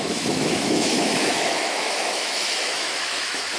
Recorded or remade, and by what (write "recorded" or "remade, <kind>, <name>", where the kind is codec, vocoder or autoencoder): remade, autoencoder, DAC-VAE